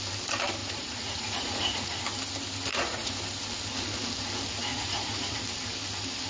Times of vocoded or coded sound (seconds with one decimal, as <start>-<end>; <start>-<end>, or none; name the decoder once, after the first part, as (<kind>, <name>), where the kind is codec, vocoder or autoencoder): 0.6-2.0 (vocoder, Vocos); 2.7-3.2; 4.7-5.4